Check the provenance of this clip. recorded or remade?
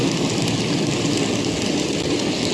recorded